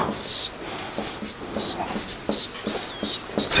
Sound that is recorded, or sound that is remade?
recorded